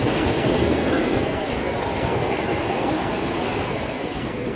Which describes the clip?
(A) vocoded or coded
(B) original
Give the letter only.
A